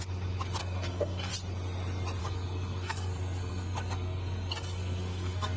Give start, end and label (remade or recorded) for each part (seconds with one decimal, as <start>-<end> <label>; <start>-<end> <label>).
0.0-0.6 recorded; 0.6-1.3 remade; 1.3-2.2 recorded; 2.2-5.6 remade